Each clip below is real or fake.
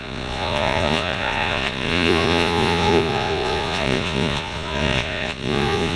fake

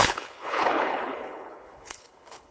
fake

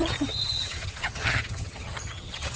fake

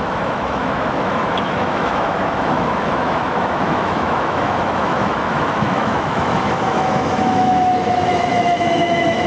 fake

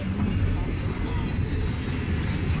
real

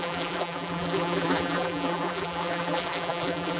fake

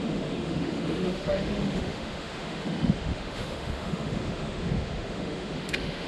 fake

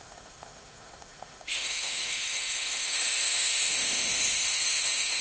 fake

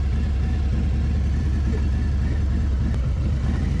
real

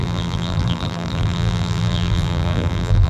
fake